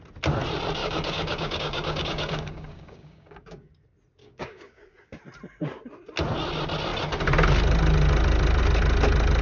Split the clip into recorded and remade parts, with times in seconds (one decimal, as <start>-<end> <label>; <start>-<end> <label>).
0.0-0.8 recorded; 0.8-3.7 remade; 3.7-4.2 recorded; 4.2-5.2 remade; 5.2-9.4 recorded